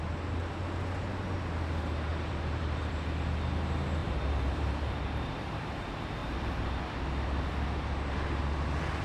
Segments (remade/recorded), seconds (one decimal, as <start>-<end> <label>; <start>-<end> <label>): 0.0-2.1 recorded; 2.1-2.9 remade; 2.9-4.0 recorded; 4.0-5.7 remade; 5.7-6.2 recorded; 6.2-7.5 remade; 7.5-9.0 recorded